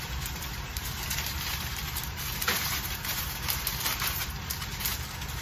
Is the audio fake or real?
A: fake